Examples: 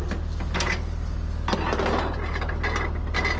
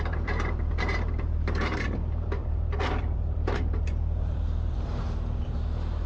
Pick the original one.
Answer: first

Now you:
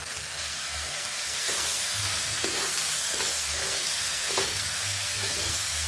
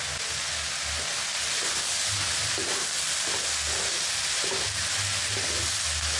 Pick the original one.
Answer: second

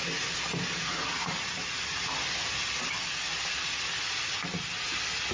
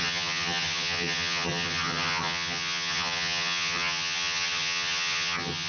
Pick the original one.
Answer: first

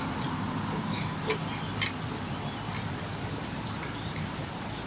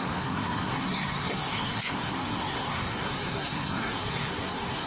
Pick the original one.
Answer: first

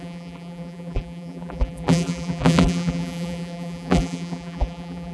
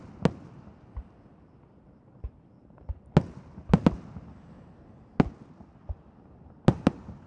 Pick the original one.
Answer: second